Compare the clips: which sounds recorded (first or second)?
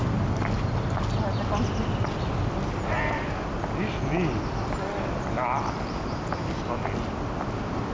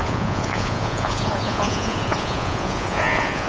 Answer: first